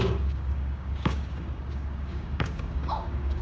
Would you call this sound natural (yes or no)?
no